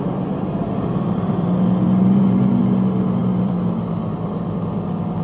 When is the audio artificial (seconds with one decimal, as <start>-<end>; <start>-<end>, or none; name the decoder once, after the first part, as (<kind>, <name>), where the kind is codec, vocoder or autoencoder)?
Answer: 0.6-2.6 (vocoder, BigVGAN v2); 3.2-4.6